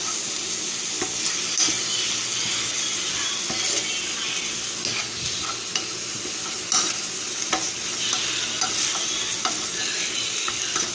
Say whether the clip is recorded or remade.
recorded